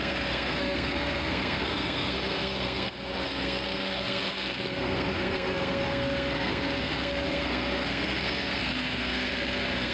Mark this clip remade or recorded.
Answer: remade